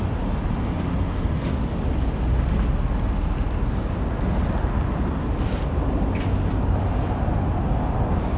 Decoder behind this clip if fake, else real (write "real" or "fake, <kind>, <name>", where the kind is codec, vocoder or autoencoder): real